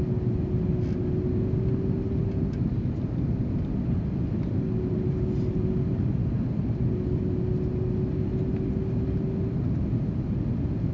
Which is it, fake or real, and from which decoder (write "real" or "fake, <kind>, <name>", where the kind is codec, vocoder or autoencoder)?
real